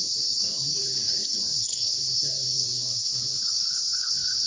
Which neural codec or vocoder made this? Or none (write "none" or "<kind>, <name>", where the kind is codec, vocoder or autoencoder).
codec, HILCodec